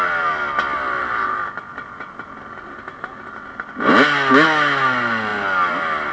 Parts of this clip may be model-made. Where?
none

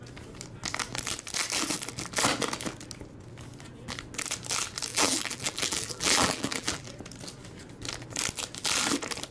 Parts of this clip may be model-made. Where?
4.9-6.9 (vocoder, BigVGAN v2)

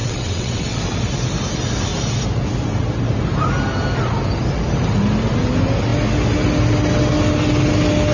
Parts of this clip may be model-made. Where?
0.0-0.8 (vocoder, WaveNeXt)

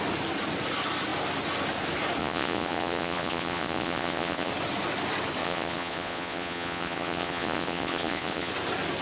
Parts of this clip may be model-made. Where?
2.2-4.5 (vocoder, Vocos); 5.4-8.5